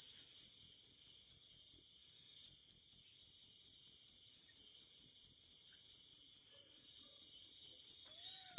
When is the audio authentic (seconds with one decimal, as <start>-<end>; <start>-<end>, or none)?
0.0-3.2; 7.9-8.6